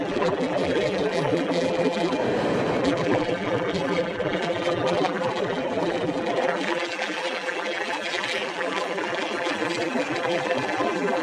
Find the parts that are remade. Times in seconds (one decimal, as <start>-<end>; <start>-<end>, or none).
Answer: 0.0-2.2; 2.8-11.2